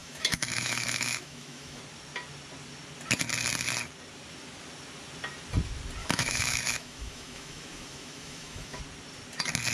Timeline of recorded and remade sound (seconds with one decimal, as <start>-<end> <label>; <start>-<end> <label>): 0.0-1.8 remade; 1.8-6.0 recorded; 6.0-8.8 remade; 8.8-9.7 recorded